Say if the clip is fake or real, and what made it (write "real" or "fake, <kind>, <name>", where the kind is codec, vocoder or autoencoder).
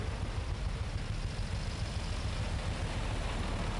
real